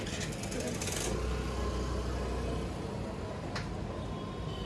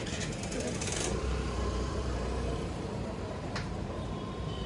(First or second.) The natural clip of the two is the first